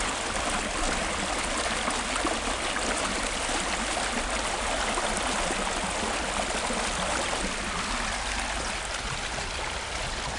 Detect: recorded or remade recorded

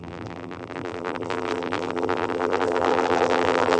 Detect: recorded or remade remade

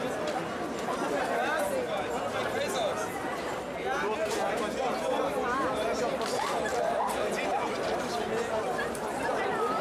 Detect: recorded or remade recorded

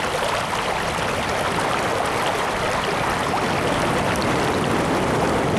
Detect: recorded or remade recorded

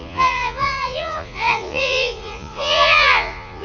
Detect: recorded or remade remade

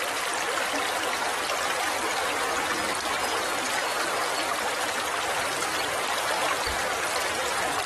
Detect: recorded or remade recorded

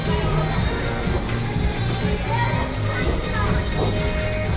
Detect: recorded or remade recorded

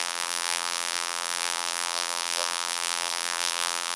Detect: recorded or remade remade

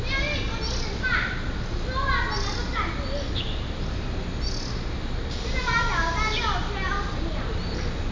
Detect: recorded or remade recorded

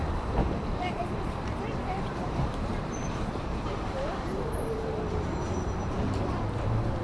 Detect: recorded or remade remade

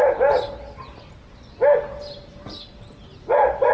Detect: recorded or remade recorded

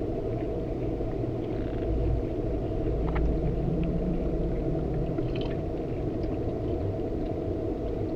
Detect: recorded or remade recorded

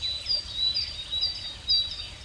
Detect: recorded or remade recorded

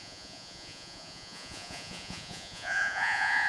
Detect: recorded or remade remade